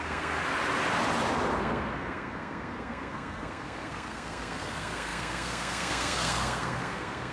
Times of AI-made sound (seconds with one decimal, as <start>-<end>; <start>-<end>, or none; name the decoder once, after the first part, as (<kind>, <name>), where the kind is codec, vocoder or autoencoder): 0.0-0.4 (codec, SNAC); 1.6-7.3